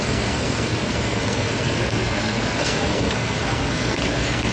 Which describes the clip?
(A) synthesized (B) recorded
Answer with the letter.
A